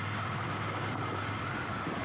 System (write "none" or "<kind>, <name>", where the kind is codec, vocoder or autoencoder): none